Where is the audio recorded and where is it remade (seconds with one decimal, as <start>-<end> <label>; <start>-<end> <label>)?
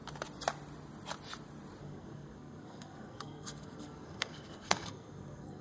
0.0-1.8 recorded; 1.8-5.6 remade